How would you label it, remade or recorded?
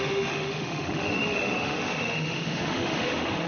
remade